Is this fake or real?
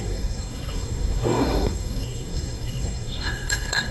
fake